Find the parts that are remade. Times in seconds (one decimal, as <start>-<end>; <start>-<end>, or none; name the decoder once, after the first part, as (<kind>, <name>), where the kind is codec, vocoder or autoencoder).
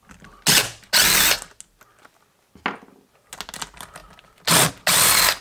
none